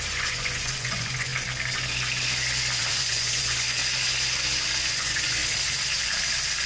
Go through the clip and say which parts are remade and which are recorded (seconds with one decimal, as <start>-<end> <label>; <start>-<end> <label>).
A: 0.0-1.3 remade; 1.3-2.8 recorded; 2.8-3.8 remade; 3.8-4.9 recorded; 4.9-5.4 remade; 5.4-6.7 recorded